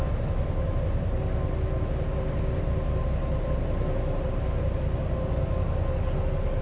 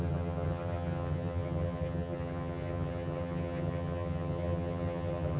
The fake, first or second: second